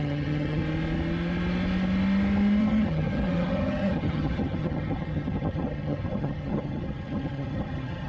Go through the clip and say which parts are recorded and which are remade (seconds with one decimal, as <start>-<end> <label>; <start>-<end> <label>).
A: 0.0-0.6 remade; 0.6-2.6 recorded; 2.6-8.1 remade